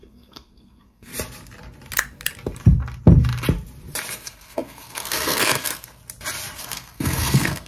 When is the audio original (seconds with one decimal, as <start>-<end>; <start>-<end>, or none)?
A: 1.1-4.1; 6.0-6.6